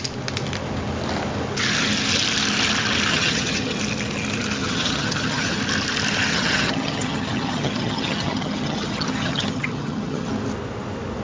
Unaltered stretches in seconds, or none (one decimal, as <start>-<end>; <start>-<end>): 0.0-3.1; 3.8-4.6; 5.6-6.3; 10.3-11.2